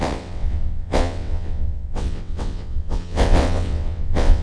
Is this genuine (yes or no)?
no